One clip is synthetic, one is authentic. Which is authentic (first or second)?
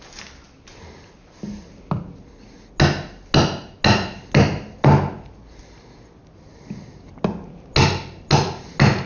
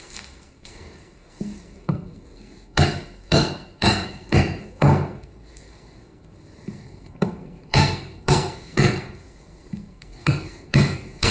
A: first